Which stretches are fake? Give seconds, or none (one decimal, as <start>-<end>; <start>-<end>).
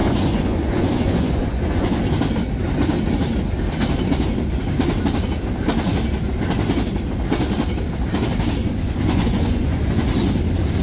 0.0-2.0; 8.6-10.1